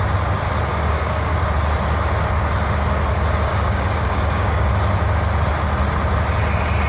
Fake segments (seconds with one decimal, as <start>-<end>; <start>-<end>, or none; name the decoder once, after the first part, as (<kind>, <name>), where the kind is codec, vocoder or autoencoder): 0.7-1.4 (codec, DAC); 3.5-4.7